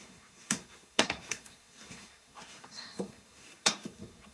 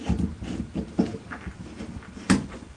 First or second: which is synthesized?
first